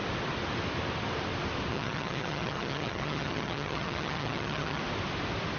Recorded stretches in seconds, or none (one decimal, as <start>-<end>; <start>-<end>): 0.0-1.7; 4.8-5.6